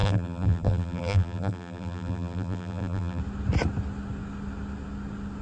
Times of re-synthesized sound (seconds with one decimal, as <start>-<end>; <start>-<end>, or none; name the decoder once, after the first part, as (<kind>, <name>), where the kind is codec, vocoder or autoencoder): 0.0-3.2 (vocoder, BigVGAN v2)